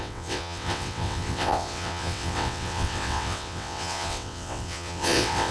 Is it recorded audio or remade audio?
remade